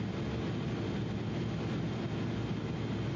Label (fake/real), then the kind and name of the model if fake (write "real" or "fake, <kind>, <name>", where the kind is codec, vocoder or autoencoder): real